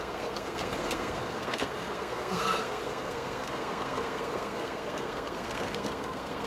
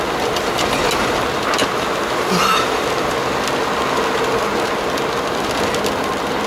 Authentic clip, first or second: second